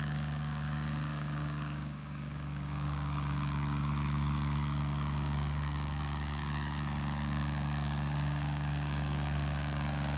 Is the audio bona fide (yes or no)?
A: no